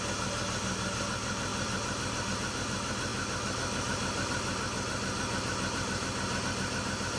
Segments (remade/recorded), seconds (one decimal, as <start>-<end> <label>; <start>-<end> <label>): 0.0-7.2 recorded